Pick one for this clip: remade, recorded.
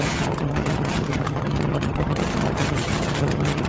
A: remade